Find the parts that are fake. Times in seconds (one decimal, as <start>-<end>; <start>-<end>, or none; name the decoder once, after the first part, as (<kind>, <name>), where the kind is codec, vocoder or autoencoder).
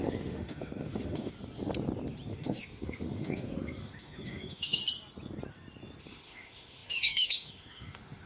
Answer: 0.0-1.3 (autoencoder, DAC-VAE); 2.3-4.8; 6.0-8.3